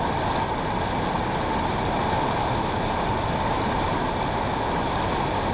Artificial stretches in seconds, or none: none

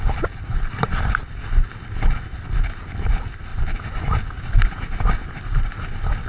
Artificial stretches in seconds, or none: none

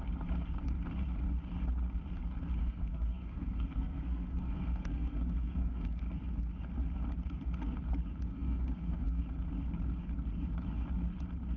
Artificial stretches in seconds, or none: 2.6-6.0 (codec, SNAC); 8.3-9.2

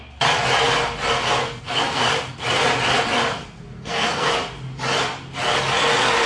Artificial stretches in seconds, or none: 1.4-2.1 (codec, SNAC); 3.4-4.3